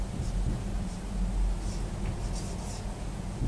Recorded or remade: recorded